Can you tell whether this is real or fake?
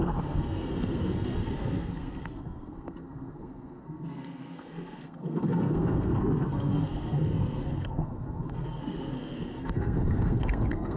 fake